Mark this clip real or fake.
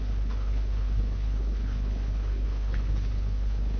fake